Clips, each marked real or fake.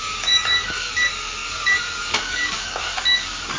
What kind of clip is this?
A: fake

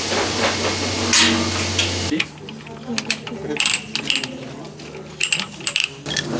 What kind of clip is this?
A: real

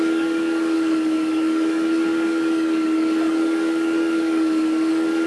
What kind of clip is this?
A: fake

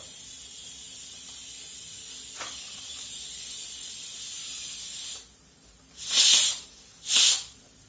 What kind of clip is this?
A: real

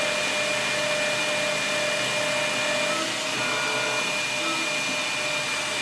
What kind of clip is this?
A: real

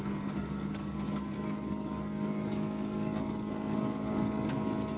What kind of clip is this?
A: fake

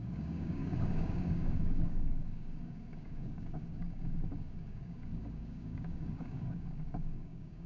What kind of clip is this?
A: fake